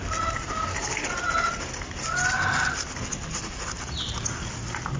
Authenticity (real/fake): real